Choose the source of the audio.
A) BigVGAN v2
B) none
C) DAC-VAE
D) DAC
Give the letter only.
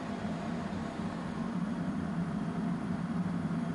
A